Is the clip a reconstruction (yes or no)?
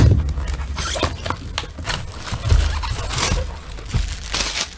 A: no